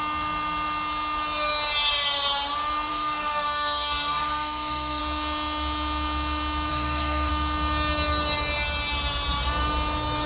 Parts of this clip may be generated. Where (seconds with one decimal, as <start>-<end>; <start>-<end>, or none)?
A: 2.9-5.0; 6.7-7.3